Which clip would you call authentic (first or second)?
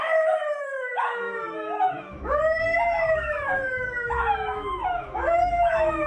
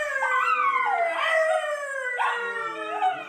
second